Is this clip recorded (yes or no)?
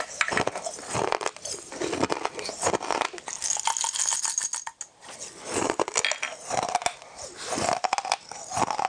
yes